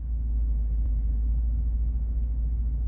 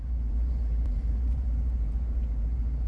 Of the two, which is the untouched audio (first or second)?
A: first